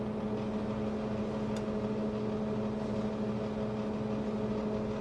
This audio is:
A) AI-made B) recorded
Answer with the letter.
B